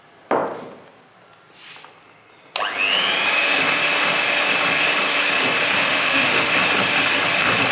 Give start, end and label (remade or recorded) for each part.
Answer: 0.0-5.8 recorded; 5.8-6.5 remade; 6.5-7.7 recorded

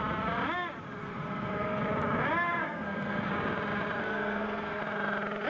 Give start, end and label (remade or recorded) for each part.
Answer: 0.0-1.0 recorded; 1.0-1.8 remade; 1.8-2.6 recorded; 2.6-3.3 remade; 3.3-4.0 recorded; 4.0-4.8 remade; 4.8-5.5 recorded

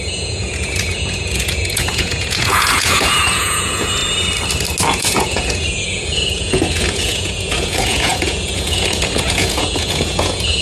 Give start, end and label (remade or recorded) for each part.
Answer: 0.0-4.0 remade; 4.0-4.9 recorded; 4.9-10.6 remade

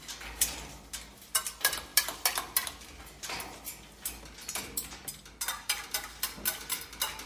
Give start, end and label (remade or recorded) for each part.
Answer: 0.0-7.3 recorded